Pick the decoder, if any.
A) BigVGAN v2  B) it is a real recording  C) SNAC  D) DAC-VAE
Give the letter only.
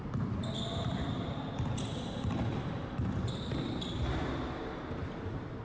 B